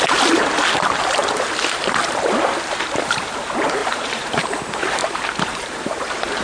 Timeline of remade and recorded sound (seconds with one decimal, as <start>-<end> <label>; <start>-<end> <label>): 0.0-3.8 recorded; 3.8-4.6 remade; 4.6-5.0 recorded; 5.0-6.4 remade